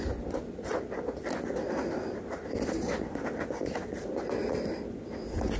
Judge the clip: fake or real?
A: real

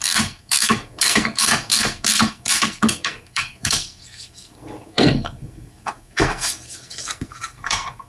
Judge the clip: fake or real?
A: fake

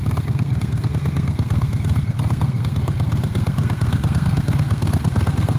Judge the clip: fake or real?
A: fake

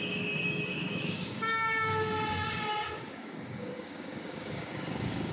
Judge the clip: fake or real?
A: fake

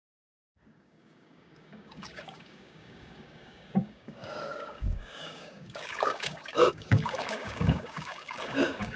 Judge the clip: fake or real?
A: fake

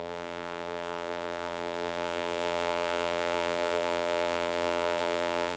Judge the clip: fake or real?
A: fake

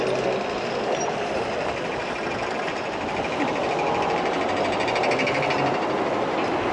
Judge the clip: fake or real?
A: real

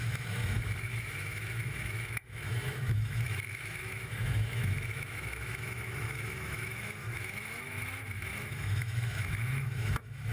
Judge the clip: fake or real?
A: fake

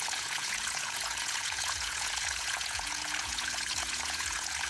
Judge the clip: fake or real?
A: fake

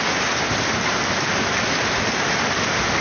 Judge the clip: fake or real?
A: real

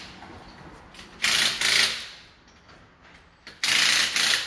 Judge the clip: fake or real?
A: real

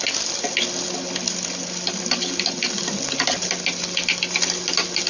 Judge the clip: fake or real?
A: real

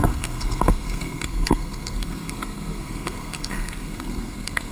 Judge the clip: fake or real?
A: fake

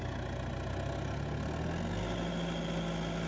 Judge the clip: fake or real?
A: real